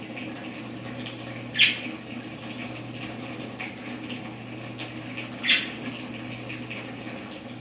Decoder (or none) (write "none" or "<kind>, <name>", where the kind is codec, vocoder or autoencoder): none